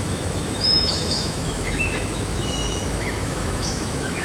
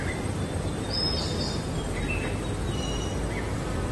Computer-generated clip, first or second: first